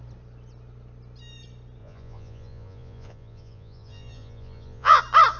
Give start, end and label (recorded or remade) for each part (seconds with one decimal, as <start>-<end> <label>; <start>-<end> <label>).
0.0-1.8 recorded; 1.8-5.0 remade; 5.0-5.4 recorded